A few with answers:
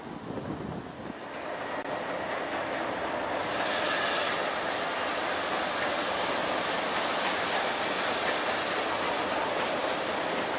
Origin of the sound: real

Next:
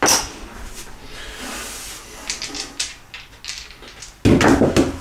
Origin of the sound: real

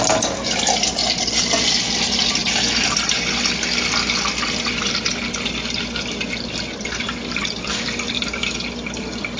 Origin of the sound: real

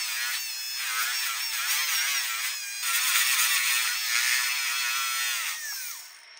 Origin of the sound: real